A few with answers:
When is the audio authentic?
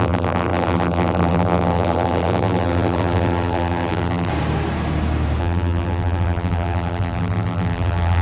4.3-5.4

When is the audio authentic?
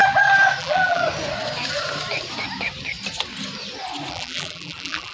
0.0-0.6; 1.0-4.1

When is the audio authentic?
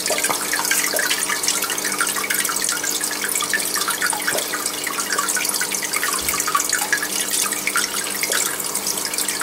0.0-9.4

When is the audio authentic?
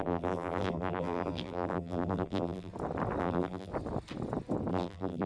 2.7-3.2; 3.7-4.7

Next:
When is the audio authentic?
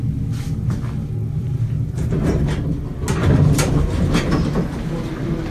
0.0-1.4; 2.4-3.2; 4.3-5.5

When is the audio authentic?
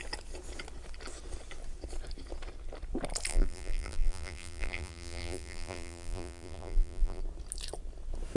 0.0-3.3; 7.2-8.4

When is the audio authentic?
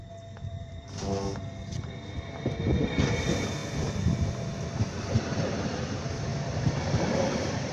0.0-0.4; 0.9-6.3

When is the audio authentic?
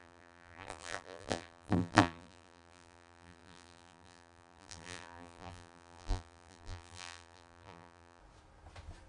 8.2-9.1